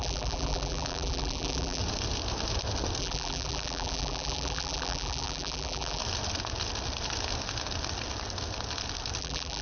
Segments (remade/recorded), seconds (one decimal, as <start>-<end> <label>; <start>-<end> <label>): 0.0-1.8 remade; 1.8-3.0 recorded; 3.0-6.0 remade; 6.0-9.2 recorded; 9.2-9.6 remade